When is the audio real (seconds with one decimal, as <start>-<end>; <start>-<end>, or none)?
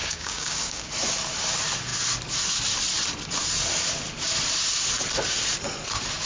0.9-6.3